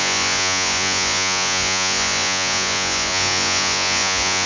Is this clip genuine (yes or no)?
no